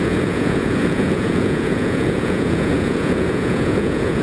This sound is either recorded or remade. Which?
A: remade